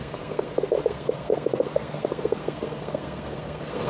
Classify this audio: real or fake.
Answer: fake